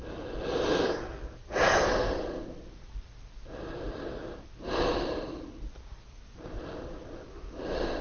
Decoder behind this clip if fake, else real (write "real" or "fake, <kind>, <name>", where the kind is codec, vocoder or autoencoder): real